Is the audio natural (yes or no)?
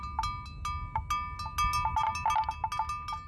yes